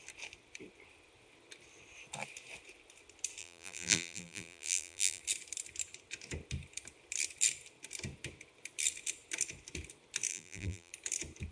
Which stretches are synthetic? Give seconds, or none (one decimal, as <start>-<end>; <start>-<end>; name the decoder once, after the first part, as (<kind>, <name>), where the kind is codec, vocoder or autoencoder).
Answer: 3.4-5.2 (vocoder, BigVGAN v2); 10.3-10.9